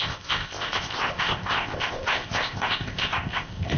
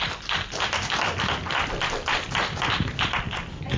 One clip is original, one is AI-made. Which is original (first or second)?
second